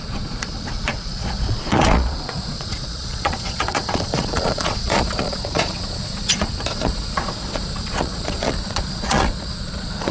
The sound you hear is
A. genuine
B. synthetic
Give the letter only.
B